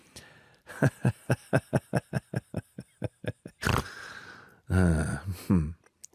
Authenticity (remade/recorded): recorded